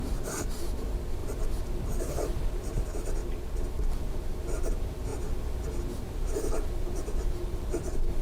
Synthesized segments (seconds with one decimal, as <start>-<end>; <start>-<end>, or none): 0.0-3.2; 4.0-5.1; 6.3-8.2